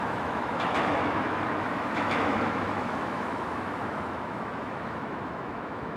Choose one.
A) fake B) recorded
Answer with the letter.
A